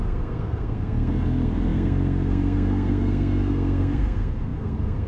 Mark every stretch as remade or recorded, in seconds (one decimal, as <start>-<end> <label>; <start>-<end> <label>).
0.0-5.1 remade